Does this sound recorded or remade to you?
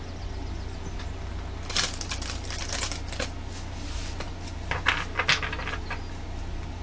recorded